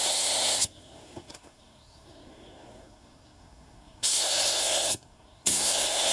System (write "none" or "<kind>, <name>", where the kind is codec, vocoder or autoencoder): codec, SNAC